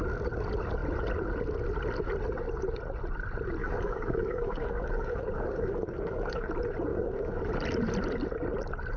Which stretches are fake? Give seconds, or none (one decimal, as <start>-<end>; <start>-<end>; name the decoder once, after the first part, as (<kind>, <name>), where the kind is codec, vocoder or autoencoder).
3.6-6.5 (codec, DAC); 6.9-7.4